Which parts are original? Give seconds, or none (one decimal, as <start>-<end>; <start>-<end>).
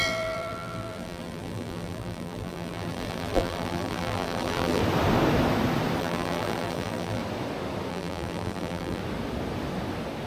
4.8-6.0; 7.2-7.9; 9.0-10.3